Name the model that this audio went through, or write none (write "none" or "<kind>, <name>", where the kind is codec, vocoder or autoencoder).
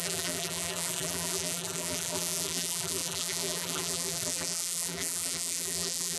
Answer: vocoder, BigVGAN v2